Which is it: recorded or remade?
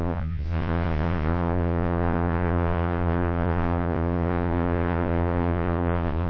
remade